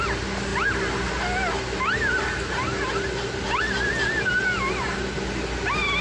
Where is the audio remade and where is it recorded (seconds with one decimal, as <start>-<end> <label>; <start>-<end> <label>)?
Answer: 0.0-6.0 recorded